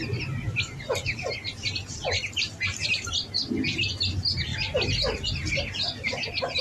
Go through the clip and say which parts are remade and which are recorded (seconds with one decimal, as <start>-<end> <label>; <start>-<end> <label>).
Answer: 0.0-6.6 recorded

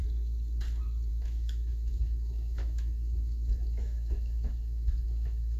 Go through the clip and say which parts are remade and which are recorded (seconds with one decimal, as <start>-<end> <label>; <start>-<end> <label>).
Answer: 0.0-1.1 recorded; 1.1-5.6 remade

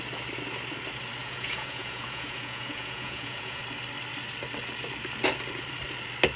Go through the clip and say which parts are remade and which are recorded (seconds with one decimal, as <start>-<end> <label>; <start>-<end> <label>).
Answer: 0.0-1.2 recorded; 1.2-3.6 remade; 3.6-6.4 recorded